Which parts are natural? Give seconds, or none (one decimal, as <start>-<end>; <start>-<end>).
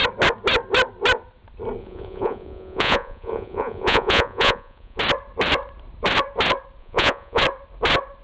0.0-1.8; 5.0-6.8; 7.4-8.2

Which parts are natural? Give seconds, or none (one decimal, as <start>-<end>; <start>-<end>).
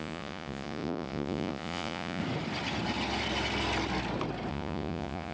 2.2-4.5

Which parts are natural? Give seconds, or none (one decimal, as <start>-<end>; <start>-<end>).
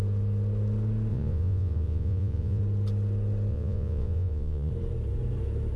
0.0-1.1; 2.6-3.5; 4.7-5.8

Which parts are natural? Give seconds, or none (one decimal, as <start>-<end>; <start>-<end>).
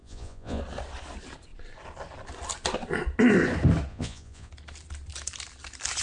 0.6-3.9; 4.5-6.0